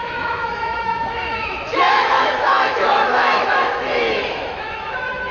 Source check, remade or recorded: remade